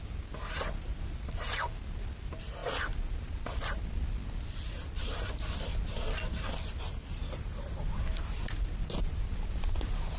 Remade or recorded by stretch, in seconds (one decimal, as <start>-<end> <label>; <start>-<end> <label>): 0.0-10.2 recorded